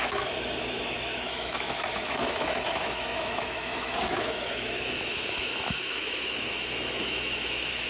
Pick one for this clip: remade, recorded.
remade